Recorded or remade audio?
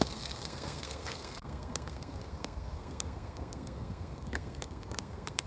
remade